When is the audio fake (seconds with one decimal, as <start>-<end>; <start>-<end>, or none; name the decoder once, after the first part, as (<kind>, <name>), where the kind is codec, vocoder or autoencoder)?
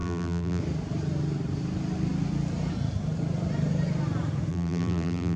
0.0-0.6 (vocoder, BigVGAN v2); 4.5-5.4